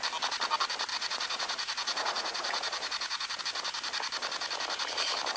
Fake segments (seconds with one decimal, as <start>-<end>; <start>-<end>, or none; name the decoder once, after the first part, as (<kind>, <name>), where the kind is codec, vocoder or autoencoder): 0.9-3.4 (vocoder, Vocos)